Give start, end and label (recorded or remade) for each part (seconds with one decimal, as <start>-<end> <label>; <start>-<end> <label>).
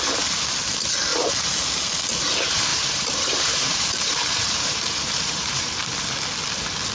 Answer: 0.0-2.7 recorded; 2.7-5.7 remade; 5.7-6.9 recorded